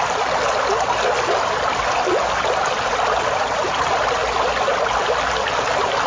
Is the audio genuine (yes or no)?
yes